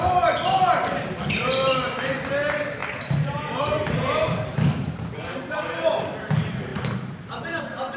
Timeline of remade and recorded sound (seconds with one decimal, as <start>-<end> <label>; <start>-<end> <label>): 0.0-8.0 remade

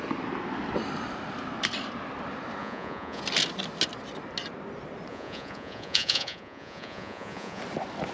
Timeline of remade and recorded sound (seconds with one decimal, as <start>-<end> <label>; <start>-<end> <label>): 0.0-2.6 recorded; 2.6-3.2 remade; 3.2-5.1 recorded; 5.1-7.6 remade; 7.6-8.1 recorded

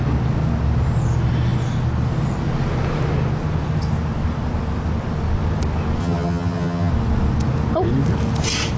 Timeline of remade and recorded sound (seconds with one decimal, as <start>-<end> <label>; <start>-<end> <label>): 0.0-6.0 recorded; 6.0-6.9 remade; 6.9-8.8 recorded

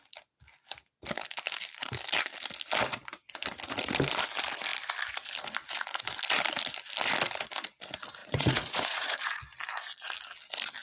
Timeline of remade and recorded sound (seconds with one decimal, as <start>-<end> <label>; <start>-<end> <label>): 0.0-8.2 recorded; 8.2-9.4 remade; 9.4-10.8 recorded

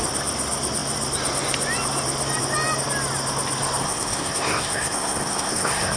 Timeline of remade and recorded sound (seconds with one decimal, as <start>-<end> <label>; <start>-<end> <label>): 0.0-3.8 recorded; 3.8-6.0 remade

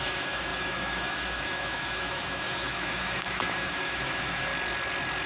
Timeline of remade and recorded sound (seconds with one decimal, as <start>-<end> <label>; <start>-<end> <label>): 0.0-4.5 remade; 4.5-5.3 recorded

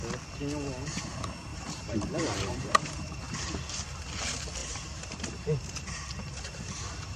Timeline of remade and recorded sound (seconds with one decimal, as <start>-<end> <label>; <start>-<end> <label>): 0.0-1.5 recorded; 1.5-3.2 remade; 3.2-4.6 recorded; 4.6-6.4 remade; 6.4-7.2 recorded